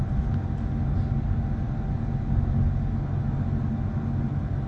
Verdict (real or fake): real